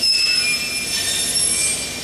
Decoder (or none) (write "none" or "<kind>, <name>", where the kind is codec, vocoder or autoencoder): none